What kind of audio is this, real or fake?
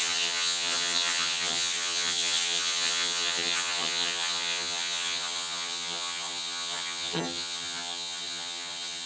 fake